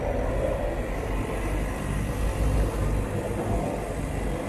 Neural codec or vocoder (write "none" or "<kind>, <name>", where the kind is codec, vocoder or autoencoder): none